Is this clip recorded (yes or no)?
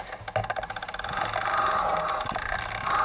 yes